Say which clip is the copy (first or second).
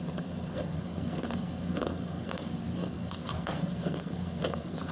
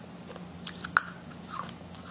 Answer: first